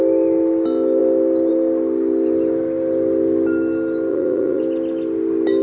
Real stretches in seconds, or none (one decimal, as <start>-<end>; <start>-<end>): 0.0-4.1; 4.6-5.6